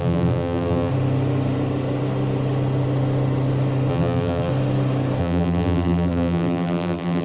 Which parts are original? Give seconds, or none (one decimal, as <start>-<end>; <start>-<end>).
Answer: 0.9-3.9; 4.5-5.2